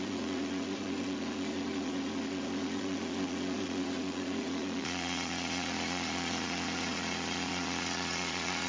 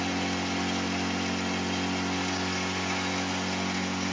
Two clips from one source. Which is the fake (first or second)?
first